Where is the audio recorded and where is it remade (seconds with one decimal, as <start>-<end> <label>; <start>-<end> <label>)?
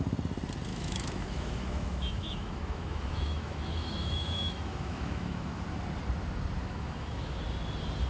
0.0-0.7 recorded; 0.7-5.6 remade; 5.6-6.6 recorded; 6.6-7.4 remade; 7.4-8.1 recorded